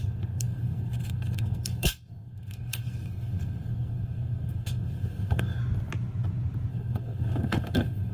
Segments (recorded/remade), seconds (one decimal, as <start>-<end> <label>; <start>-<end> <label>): 0.0-5.6 remade; 5.6-6.7 recorded; 6.7-8.1 remade